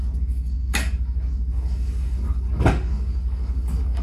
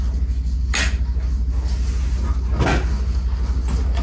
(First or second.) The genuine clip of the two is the second